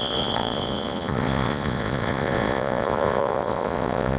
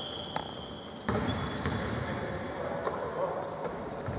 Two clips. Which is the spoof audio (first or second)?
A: first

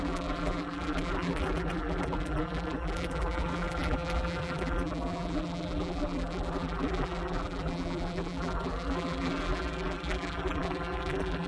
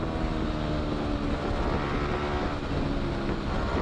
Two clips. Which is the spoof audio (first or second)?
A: first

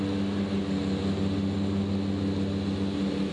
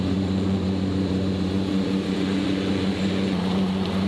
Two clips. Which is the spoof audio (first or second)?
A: second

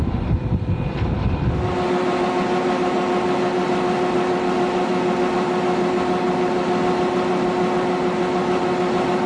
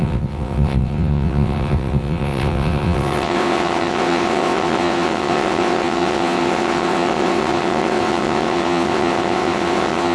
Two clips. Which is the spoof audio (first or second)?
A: second